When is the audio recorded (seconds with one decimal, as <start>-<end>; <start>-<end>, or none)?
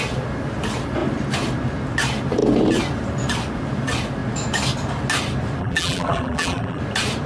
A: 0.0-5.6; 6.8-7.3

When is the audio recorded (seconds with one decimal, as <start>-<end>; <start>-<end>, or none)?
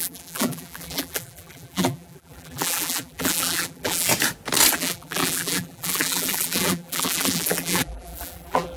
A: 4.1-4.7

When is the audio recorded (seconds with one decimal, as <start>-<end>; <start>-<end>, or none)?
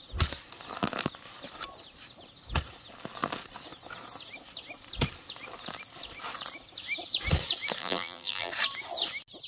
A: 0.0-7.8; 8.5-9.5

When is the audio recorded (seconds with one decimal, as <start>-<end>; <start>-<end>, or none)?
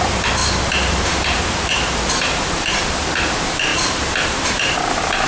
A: 0.0-0.4; 2.7-3.7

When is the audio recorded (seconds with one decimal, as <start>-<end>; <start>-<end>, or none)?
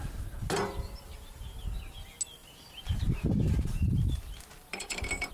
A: 0.0-1.1; 1.9-2.4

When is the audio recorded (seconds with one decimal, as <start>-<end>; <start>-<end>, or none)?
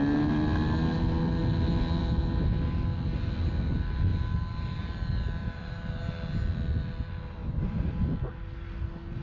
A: 0.0-5.4; 6.0-7.4; 7.9-9.2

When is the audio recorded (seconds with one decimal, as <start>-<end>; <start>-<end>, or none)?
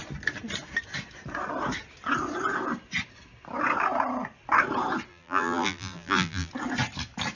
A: 0.0-5.1; 6.5-7.4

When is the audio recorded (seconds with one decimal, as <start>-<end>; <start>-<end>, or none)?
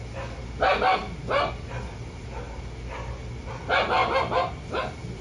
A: 0.0-4.0; 4.8-5.2